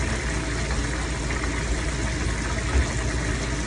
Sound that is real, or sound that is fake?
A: real